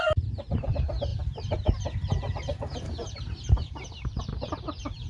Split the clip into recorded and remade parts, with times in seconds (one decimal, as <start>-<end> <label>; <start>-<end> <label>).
0.0-5.1 remade